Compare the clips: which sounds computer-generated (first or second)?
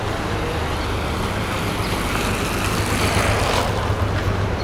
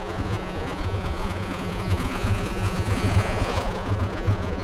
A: second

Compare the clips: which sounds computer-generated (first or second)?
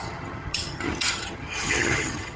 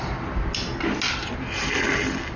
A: first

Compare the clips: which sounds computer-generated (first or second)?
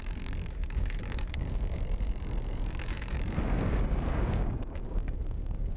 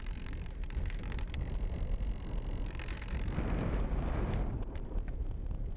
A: first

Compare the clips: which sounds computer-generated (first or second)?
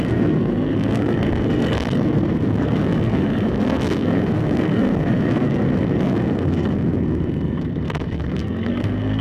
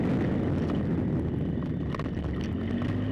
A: first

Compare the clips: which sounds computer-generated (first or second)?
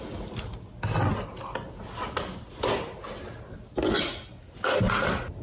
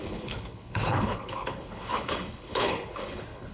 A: second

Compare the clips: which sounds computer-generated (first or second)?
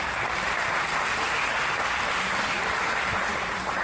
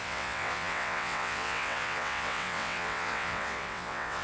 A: second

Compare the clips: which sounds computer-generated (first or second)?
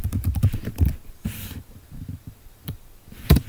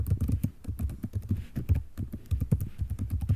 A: first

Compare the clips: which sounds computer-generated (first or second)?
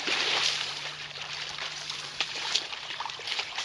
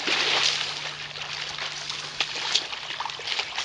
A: first